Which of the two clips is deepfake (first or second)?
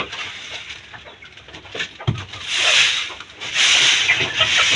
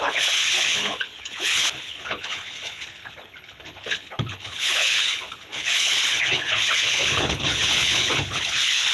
second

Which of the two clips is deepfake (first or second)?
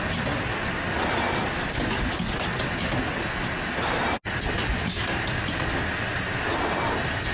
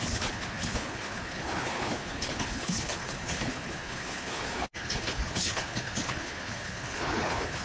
second